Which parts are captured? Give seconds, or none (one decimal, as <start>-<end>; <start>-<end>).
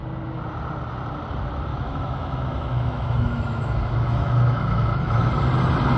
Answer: 0.0-1.7; 5.3-6.0